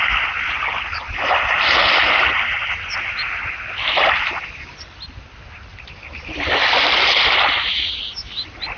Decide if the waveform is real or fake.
real